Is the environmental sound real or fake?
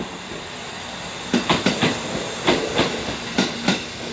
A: real